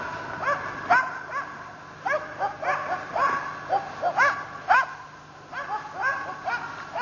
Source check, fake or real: real